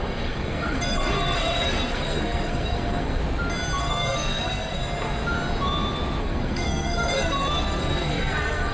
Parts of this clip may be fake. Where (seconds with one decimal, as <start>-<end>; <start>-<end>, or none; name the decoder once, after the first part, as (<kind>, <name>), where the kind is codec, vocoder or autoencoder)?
0.0-3.2 (codec, SNAC); 3.8-4.8; 6.2-8.7